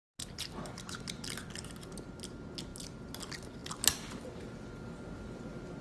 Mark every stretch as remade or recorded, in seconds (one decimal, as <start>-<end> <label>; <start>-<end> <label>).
0.0-5.8 recorded